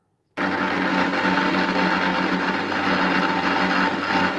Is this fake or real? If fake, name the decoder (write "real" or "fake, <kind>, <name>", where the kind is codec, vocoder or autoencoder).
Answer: real